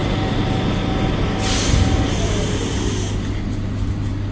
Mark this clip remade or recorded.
recorded